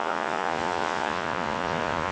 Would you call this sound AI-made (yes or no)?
yes